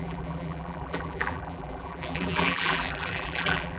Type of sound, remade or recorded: remade